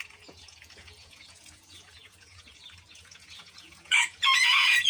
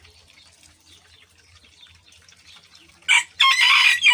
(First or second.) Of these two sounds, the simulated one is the first